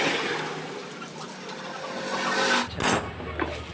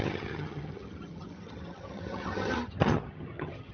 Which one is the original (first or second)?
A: first